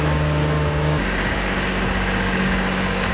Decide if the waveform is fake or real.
fake